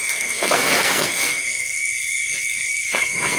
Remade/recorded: remade